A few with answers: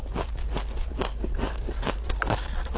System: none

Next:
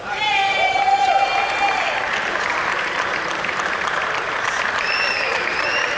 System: vocoder, BigVGAN v2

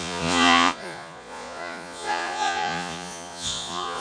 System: vocoder, Vocos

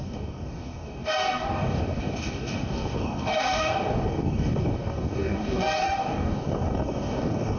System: codec, DAC